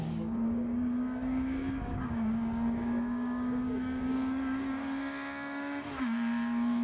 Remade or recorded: remade